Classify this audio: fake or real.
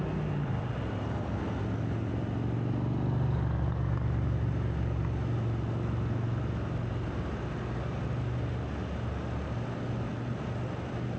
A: real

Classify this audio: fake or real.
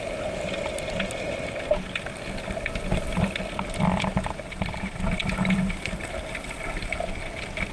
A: real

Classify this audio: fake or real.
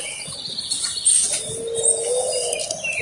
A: real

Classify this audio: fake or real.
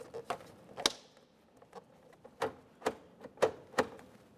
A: real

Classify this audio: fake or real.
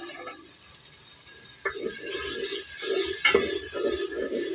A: real